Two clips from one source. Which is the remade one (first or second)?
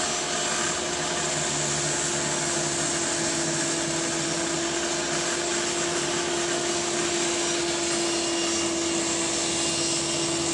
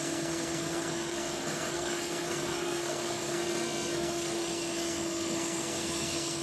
second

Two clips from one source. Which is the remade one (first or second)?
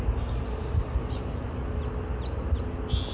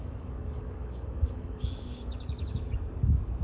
second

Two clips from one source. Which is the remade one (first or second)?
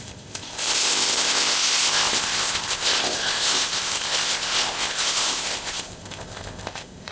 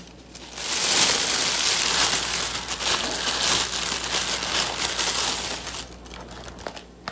first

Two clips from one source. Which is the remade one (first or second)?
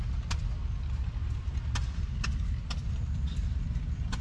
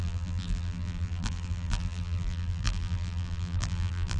second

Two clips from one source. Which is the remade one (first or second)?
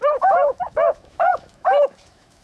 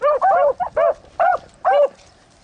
first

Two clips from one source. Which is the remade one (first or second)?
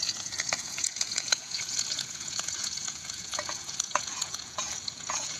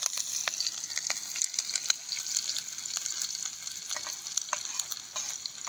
first